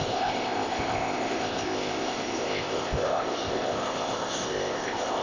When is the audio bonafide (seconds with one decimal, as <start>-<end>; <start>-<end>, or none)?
none